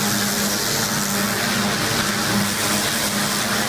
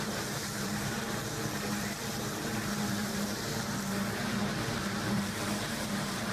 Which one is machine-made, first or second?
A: second